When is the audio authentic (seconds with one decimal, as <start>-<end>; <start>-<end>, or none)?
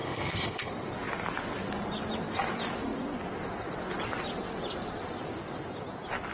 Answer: 0.7-6.3